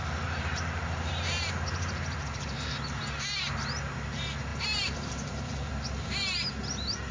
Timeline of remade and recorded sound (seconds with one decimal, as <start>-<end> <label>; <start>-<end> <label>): 0.0-2.7 remade; 2.7-4.5 recorded; 4.5-5.7 remade; 5.7-7.1 recorded